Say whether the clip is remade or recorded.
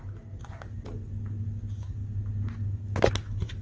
recorded